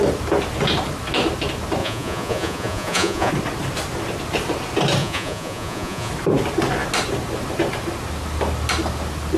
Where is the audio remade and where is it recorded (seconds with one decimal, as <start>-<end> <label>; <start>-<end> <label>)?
0.0-1.8 recorded; 1.8-3.3 remade; 3.3-5.0 recorded; 5.0-6.1 remade; 6.1-9.4 recorded